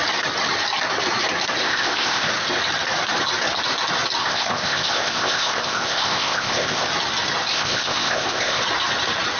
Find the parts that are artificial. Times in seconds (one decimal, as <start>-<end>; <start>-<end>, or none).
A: 1.6-2.3; 4.2-6.9; 7.5-8.6